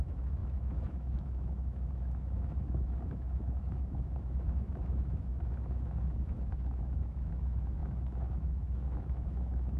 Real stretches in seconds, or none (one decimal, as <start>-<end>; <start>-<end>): none